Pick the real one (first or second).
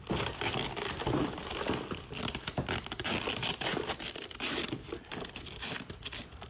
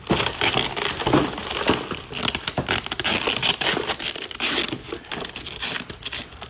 second